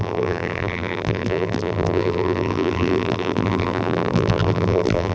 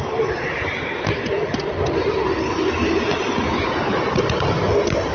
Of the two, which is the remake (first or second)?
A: first